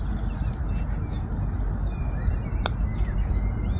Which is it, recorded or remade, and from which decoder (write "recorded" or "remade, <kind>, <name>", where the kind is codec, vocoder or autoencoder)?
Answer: recorded